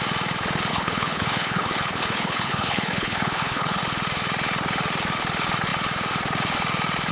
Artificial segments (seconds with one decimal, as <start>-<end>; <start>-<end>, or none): 0.7-3.8